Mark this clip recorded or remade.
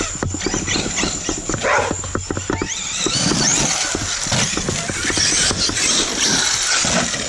recorded